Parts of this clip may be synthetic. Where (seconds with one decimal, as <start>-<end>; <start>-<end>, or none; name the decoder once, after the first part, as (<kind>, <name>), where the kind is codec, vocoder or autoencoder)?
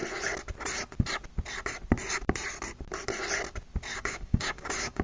3.9-5.0 (codec, DAC)